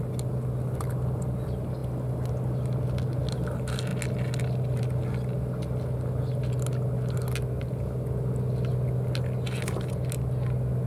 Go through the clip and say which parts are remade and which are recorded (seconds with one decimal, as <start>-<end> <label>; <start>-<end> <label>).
0.0-10.9 recorded